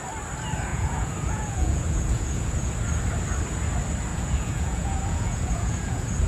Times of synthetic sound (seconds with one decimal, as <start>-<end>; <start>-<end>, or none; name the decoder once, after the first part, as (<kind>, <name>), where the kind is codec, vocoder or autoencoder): 0.7-2.7 (vocoder, Vocos); 4.1-6.3